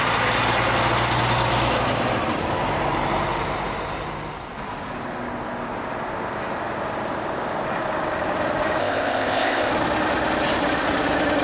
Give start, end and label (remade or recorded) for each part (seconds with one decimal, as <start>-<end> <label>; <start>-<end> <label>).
0.0-8.8 recorded; 8.8-9.7 remade; 9.7-11.4 recorded